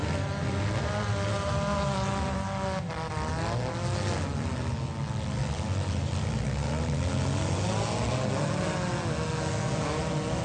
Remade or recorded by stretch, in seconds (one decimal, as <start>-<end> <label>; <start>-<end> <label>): 0.0-10.4 recorded